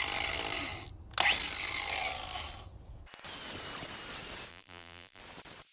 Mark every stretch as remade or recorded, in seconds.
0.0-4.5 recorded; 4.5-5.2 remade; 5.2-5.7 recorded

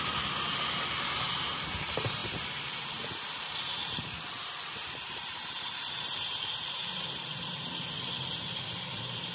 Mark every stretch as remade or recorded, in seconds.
0.0-2.2 remade; 2.2-2.8 recorded; 2.8-9.3 remade

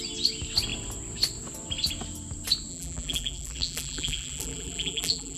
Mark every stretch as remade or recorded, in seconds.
0.0-2.7 recorded; 2.7-5.4 remade

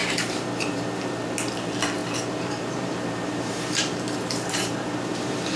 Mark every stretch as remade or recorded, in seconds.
0.0-1.1 remade; 1.1-2.0 recorded; 2.0-5.6 remade